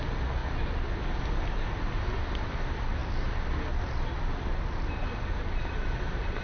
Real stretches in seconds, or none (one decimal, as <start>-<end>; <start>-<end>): 0.0-6.4